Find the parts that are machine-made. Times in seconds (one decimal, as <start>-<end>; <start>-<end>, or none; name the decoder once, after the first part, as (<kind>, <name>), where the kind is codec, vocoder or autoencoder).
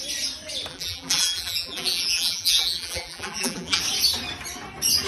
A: 0.7-3.8 (vocoder, BigVGAN v2)